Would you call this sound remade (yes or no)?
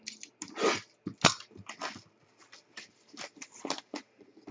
no